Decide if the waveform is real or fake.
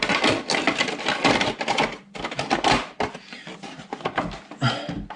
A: real